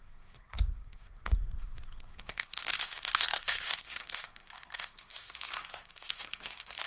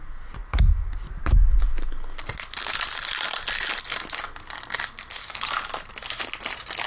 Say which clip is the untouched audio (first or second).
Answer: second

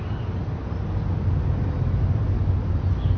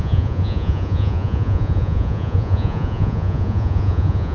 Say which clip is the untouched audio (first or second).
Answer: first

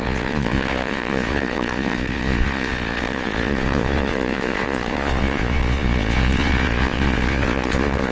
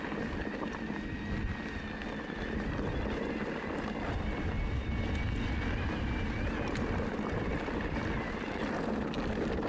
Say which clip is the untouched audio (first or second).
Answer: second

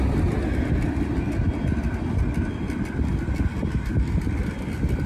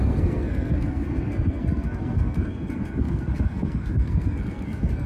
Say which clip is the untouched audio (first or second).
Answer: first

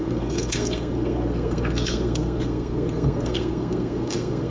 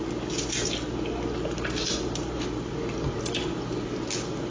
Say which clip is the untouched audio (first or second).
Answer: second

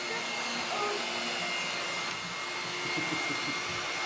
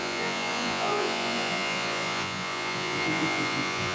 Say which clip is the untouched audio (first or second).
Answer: first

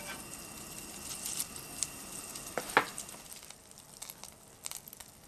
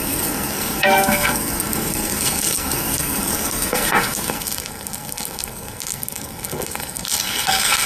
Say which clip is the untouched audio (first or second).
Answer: first